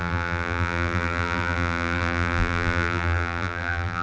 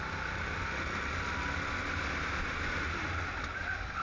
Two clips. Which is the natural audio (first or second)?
second